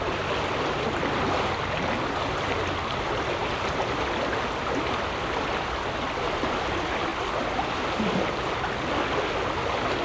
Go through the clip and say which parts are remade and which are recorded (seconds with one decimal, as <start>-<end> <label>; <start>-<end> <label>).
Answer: 0.0-10.0 recorded